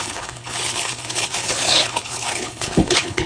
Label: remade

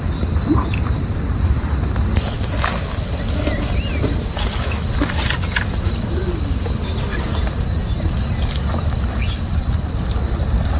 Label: recorded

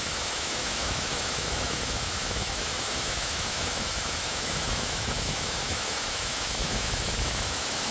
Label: remade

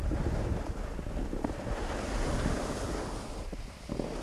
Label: recorded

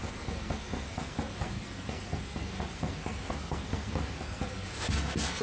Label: remade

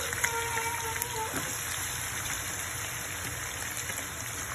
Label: recorded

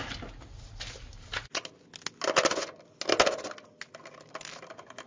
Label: recorded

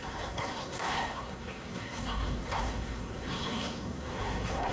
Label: remade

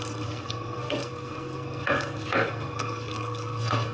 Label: remade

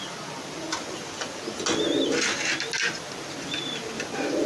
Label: recorded